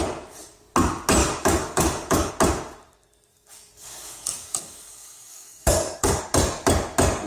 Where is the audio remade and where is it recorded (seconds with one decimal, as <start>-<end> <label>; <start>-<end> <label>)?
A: 0.0-1.2 recorded; 1.2-2.3 remade; 2.3-3.3 recorded; 3.3-6.2 remade; 6.2-7.3 recorded